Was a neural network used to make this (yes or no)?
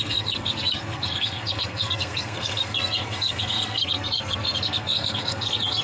yes